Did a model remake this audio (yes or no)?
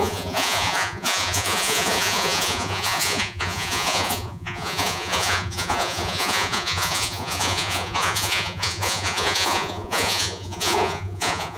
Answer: yes